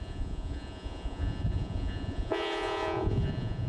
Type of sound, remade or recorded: remade